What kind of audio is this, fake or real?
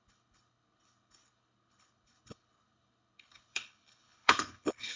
fake